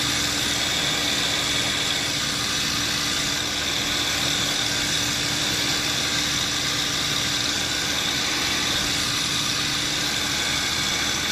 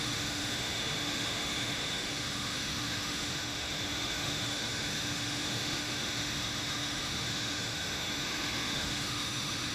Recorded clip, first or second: first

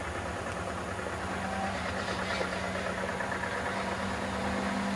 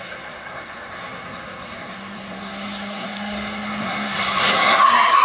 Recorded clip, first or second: first